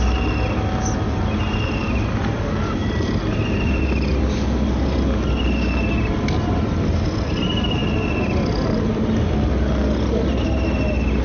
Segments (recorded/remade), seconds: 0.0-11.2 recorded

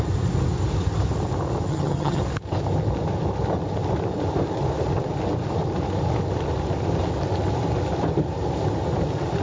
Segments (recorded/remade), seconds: 0.0-1.7 recorded; 1.7-2.2 remade; 2.2-9.4 recorded

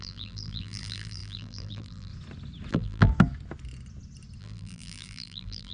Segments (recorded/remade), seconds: 0.0-2.1 remade; 2.1-2.7 recorded; 2.7-3.1 remade; 3.1-4.4 recorded; 4.4-5.7 remade

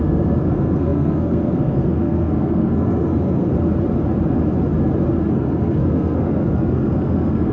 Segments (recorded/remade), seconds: 0.0-3.5 remade; 3.5-5.3 recorded; 5.3-7.5 remade

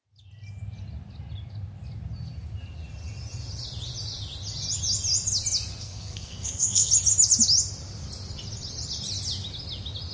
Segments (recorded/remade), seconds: 0.0-5.8 recorded; 5.8-6.9 remade; 6.9-10.1 recorded